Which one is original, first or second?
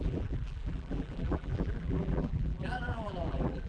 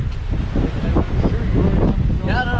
second